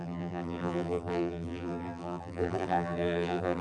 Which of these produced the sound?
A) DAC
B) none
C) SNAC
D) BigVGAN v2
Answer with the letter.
D